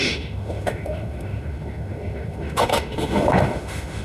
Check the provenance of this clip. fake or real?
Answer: fake